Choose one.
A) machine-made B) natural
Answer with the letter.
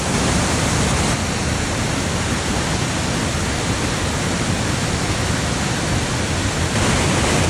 B